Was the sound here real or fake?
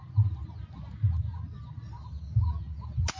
real